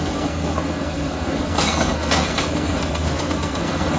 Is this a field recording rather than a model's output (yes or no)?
no